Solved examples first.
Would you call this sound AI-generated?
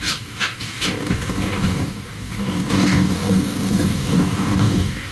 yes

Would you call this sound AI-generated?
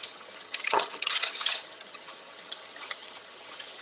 yes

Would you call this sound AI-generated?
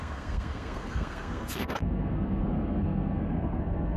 yes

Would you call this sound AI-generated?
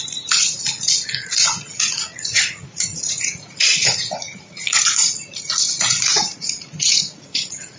yes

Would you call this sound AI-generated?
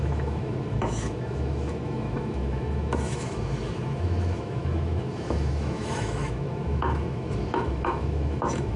yes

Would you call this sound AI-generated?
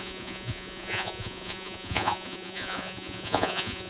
yes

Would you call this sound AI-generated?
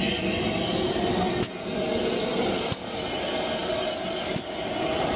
no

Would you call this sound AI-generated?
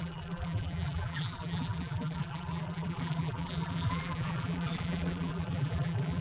yes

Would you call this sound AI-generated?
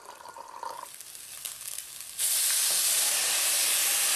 no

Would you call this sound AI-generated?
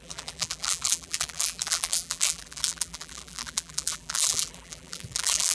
yes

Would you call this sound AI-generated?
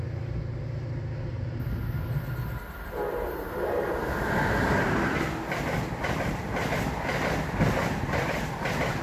no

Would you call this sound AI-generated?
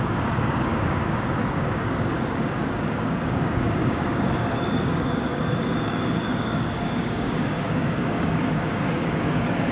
yes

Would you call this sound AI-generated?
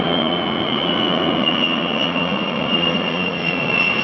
yes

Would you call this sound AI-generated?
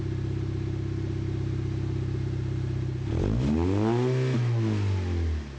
no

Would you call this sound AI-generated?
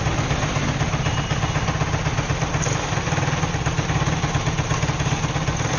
no